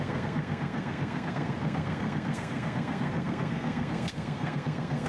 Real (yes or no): no